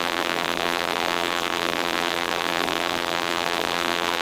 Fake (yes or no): yes